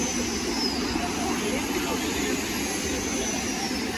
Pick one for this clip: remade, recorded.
recorded